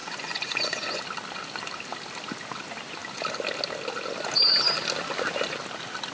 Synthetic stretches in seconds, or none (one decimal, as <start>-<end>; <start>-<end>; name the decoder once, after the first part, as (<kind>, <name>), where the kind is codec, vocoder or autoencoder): 0.0-1.0 (vocoder, Vocos)